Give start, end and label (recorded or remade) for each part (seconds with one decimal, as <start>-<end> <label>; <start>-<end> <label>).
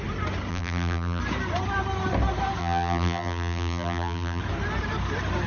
0.0-0.5 recorded; 0.5-1.2 remade; 1.2-2.6 recorded; 2.6-4.4 remade; 4.4-5.5 recorded